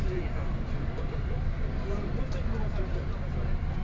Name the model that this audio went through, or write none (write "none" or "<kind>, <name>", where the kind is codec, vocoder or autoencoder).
none